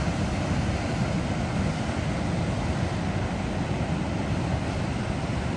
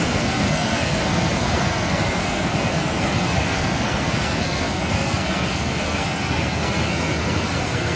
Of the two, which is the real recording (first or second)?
first